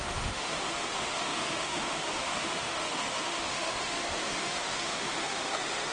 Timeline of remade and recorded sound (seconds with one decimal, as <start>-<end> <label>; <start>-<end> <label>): 0.0-5.9 remade